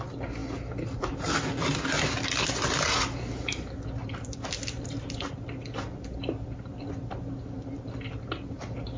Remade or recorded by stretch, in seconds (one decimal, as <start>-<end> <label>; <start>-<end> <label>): 0.0-9.0 recorded